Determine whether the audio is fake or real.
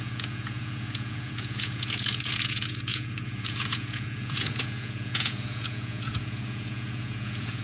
fake